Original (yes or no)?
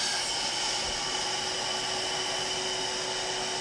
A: yes